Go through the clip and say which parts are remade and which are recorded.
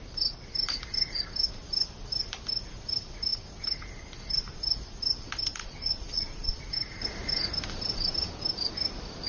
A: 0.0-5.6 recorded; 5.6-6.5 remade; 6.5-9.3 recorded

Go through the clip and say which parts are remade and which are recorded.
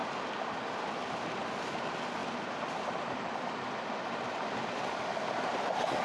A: 0.0-6.0 recorded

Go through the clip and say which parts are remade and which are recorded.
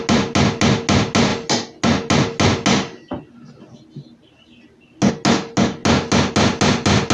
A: 0.0-7.1 recorded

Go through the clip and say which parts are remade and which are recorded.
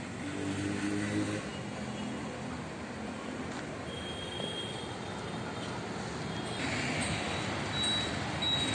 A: 0.0-8.7 recorded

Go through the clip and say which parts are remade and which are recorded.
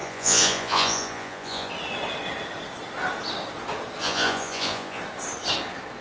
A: 0.0-1.7 remade; 1.7-4.0 recorded; 4.0-5.0 remade; 5.0-6.0 recorded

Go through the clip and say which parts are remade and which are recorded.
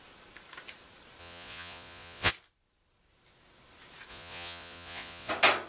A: 0.0-1.2 recorded; 1.2-2.3 remade; 2.3-4.1 recorded; 4.1-5.3 remade; 5.3-5.7 recorded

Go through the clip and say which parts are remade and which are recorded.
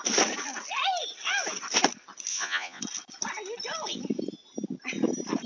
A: 0.0-2.3 recorded; 2.3-2.8 remade; 2.8-5.5 recorded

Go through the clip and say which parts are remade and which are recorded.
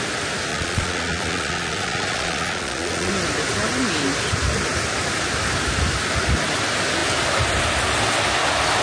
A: 0.0-0.5 recorded; 0.5-3.1 remade; 3.1-8.8 recorded